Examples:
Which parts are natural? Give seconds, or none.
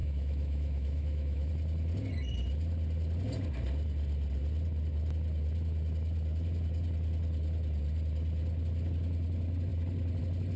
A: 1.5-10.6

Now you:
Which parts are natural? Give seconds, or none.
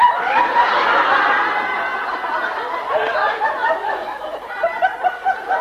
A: 0.0-3.2; 4.5-5.6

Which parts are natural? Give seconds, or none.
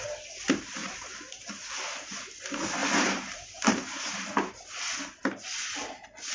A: 0.0-0.8; 2.1-2.8; 4.9-6.3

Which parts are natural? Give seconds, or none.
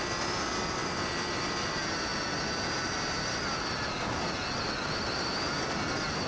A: 0.0-6.3